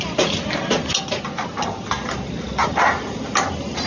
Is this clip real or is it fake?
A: real